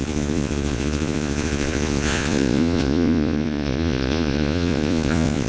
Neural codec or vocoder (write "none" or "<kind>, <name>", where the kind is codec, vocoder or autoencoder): vocoder, Vocos